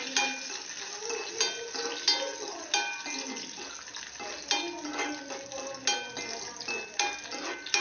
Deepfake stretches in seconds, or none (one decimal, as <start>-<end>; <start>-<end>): none